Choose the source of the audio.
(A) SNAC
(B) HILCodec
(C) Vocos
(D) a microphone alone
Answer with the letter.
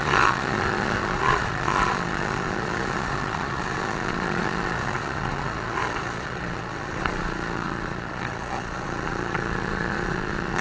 C